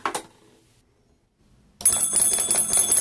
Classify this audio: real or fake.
real